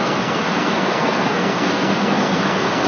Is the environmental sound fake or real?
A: fake